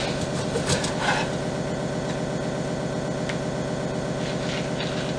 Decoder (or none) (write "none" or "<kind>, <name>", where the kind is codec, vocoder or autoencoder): none